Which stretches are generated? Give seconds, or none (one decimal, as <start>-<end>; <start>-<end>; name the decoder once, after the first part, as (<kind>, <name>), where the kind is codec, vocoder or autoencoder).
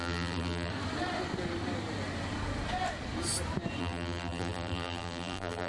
0.0-0.7 (vocoder, BigVGAN v2); 3.8-5.7